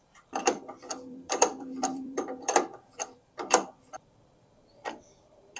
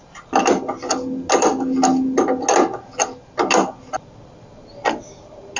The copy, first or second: first